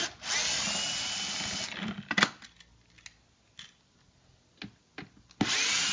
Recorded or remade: recorded